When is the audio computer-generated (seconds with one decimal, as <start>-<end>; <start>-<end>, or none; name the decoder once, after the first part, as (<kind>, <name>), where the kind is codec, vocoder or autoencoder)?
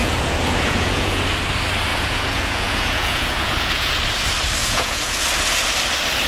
0.0-1.2 (vocoder, Vocos); 1.9-4.0; 4.6-5.1